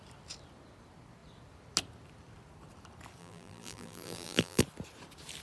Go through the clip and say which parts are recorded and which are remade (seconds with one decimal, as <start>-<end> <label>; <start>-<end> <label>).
0.0-3.2 recorded; 3.2-4.6 remade; 4.6-5.4 recorded